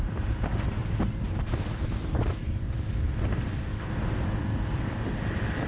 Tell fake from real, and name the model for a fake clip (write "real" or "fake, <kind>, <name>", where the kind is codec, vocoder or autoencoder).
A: fake, vocoder, BigVGAN v2